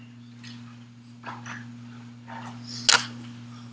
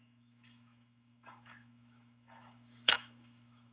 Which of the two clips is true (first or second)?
first